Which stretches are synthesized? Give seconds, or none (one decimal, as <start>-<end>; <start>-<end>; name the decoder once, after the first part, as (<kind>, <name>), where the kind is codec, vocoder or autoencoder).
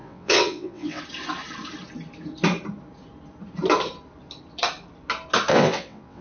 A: 0.0-1.0 (vocoder, WaveNeXt); 5.5-6.2